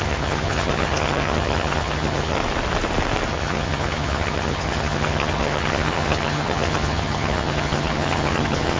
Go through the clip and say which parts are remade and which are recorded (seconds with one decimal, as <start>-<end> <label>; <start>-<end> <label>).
0.0-2.4 remade; 2.4-3.3 recorded; 3.3-8.8 remade